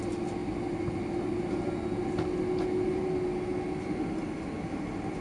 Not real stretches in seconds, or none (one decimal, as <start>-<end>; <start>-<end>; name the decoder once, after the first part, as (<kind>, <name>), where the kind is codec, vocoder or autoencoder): none